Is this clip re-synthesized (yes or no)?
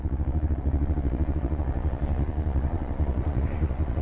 yes